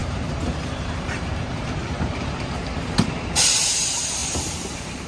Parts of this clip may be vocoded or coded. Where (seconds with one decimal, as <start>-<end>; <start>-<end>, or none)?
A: 0.0-5.1